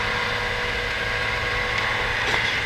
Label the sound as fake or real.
real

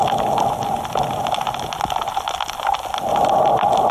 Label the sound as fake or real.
real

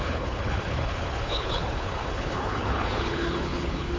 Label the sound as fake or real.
fake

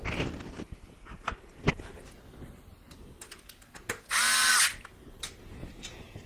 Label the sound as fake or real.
real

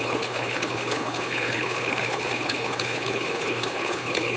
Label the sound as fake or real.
fake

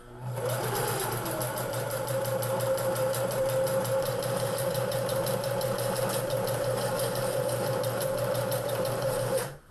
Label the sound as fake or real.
fake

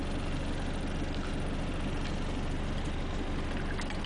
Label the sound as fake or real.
real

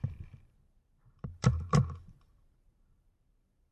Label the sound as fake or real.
fake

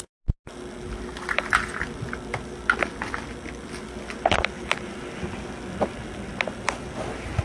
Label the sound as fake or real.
real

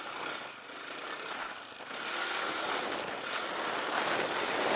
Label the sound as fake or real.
real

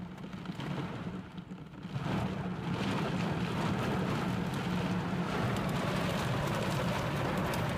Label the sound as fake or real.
real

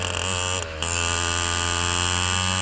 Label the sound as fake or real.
real